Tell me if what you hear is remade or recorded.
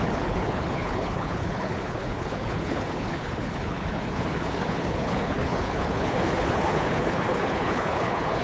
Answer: remade